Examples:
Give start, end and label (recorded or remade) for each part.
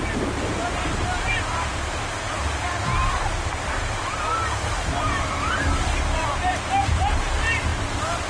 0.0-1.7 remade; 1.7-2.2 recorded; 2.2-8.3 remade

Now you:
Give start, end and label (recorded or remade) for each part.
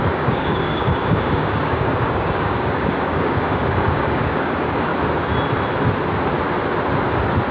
0.0-4.9 remade; 4.9-7.5 recorded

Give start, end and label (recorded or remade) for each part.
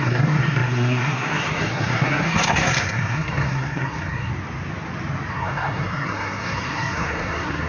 0.0-4.3 remade; 4.3-5.3 recorded; 5.3-7.7 remade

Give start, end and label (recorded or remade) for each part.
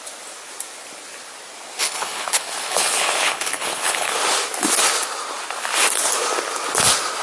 0.0-1.8 recorded; 1.8-4.2 remade; 4.2-7.2 recorded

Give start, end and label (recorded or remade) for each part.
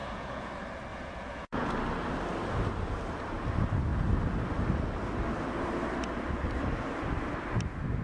0.0-0.5 remade; 0.5-0.9 recorded; 0.9-1.7 remade; 1.7-8.0 recorded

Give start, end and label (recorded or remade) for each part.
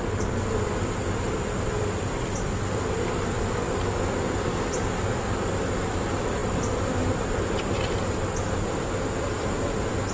0.0-10.1 recorded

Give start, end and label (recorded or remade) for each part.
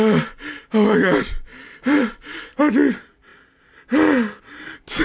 0.0-1.5 recorded; 1.5-2.6 remade; 2.6-5.0 recorded